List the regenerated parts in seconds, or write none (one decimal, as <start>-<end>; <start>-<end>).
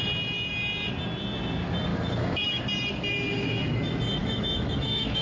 1.9-2.6; 4.2-5.2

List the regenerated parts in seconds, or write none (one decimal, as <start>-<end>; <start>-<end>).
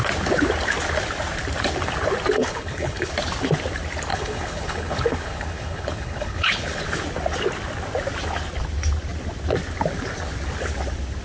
2.4-3.1; 4.1-6.8